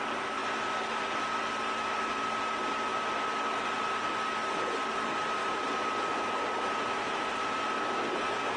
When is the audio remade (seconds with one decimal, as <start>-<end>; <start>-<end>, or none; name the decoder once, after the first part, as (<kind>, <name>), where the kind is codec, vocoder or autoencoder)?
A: 0.0-0.4 (vocoder, BigVGAN v2); 1.5-2.9; 3.6-8.6